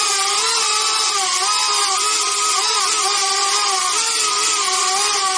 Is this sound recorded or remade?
recorded